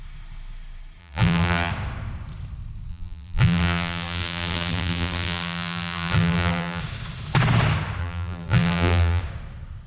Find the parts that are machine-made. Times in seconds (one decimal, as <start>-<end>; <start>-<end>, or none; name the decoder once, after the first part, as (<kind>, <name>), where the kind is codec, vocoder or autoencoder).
1.0-1.7 (vocoder, BigVGAN v2); 2.9-6.8; 8.0-9.2